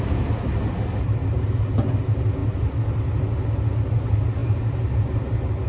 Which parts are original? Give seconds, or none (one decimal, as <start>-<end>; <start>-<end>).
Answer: 0.0-5.7